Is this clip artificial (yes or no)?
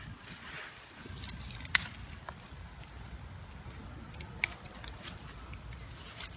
no